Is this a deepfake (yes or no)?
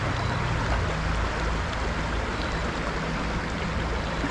no